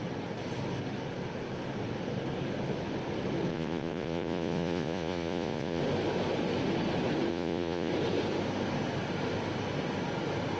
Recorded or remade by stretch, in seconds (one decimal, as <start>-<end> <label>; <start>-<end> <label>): 0.0-3.5 recorded; 3.5-5.8 remade; 5.8-7.3 recorded; 7.3-7.9 remade; 7.9-10.6 recorded